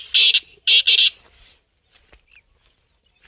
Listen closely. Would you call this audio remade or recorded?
recorded